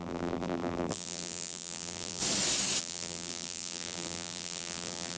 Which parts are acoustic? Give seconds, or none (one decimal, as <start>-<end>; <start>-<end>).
2.2-2.8